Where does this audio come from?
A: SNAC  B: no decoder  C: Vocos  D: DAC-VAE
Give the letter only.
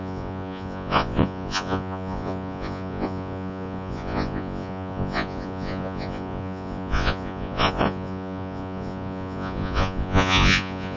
C